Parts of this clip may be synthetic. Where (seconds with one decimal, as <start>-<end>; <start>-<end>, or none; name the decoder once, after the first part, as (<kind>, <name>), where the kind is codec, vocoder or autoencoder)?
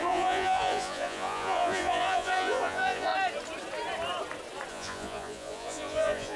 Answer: 0.0-3.1 (vocoder, Vocos); 4.7-6.4